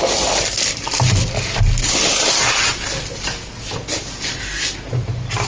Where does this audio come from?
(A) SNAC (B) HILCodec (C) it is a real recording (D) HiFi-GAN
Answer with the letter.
C